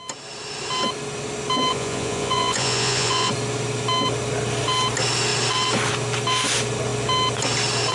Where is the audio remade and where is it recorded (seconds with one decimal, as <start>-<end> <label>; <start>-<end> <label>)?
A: 0.0-1.7 recorded; 1.7-3.3 remade; 3.3-7.9 recorded

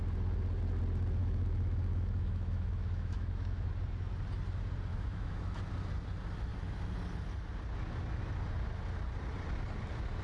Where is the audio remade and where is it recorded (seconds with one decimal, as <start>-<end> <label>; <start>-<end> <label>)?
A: 0.0-1.2 recorded; 1.2-3.7 remade; 3.7-4.9 recorded; 4.9-5.6 remade; 5.6-10.2 recorded

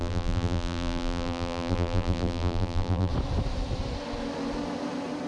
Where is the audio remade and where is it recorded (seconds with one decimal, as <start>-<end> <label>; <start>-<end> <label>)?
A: 0.0-3.1 remade; 3.1-5.3 recorded

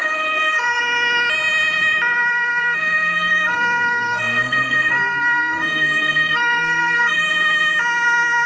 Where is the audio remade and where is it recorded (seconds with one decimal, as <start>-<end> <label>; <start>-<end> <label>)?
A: 0.0-0.8 remade; 0.8-2.3 recorded; 2.3-7.3 remade; 7.3-8.5 recorded

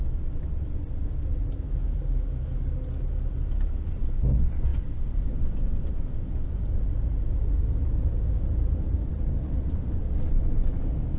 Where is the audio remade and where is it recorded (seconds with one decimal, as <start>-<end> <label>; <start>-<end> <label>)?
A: 0.0-11.2 recorded

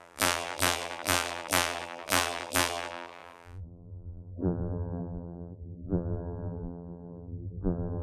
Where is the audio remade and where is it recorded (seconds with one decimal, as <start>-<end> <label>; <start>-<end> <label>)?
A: 0.0-8.0 remade

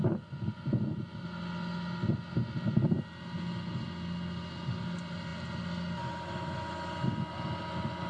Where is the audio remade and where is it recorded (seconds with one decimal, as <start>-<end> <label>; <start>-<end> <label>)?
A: 0.0-8.1 recorded